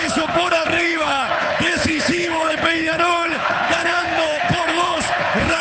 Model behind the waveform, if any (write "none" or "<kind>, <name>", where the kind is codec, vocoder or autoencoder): codec, HILCodec